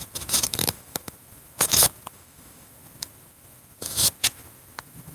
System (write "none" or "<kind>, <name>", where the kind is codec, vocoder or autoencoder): autoencoder, DAC-VAE